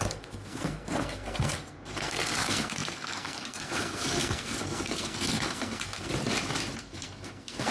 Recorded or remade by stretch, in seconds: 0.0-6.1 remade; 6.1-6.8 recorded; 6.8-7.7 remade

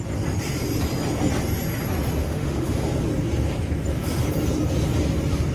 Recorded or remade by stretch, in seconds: 0.0-2.2 recorded; 2.2-3.0 remade; 3.0-5.5 recorded

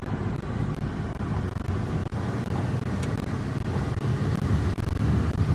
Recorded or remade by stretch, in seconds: 0.0-5.5 recorded

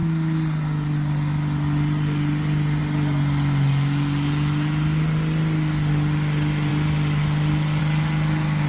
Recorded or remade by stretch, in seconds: 0.0-8.7 recorded